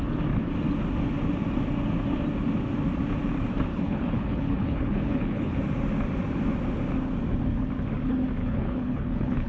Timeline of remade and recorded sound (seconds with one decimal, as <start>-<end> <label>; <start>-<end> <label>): 0.0-3.7 recorded; 3.7-5.6 remade; 5.6-8.4 recorded; 8.4-9.5 remade